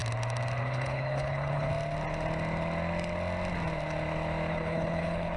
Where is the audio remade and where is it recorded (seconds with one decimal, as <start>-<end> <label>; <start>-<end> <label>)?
0.0-0.6 recorded; 0.6-1.7 remade; 1.7-4.5 recorded; 4.5-5.4 remade